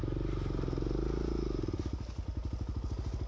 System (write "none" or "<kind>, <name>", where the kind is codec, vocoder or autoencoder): none